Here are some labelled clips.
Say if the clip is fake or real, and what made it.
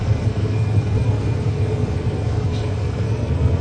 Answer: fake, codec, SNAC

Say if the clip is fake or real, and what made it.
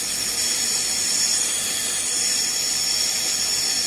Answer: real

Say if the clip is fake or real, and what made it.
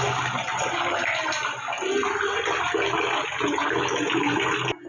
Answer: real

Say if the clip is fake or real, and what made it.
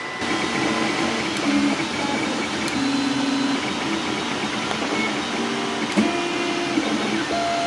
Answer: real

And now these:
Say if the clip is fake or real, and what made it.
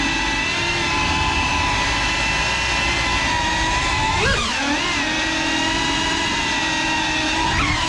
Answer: real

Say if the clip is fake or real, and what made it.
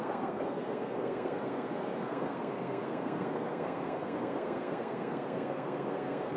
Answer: fake, codec, SNAC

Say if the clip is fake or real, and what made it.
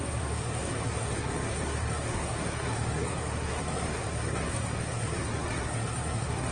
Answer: fake, codec, SNAC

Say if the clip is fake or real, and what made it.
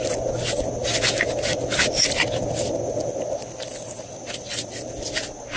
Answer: real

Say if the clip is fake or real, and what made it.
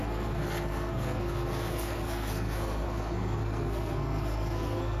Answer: fake, codec, SNAC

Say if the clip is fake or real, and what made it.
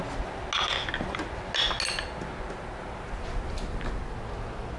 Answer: real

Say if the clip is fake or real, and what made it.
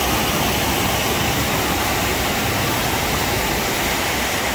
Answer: real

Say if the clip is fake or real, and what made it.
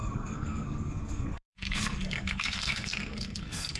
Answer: fake, codec, SNAC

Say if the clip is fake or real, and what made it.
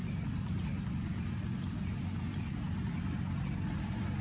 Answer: real